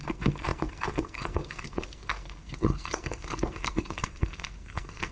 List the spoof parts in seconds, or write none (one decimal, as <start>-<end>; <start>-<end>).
0.0-5.1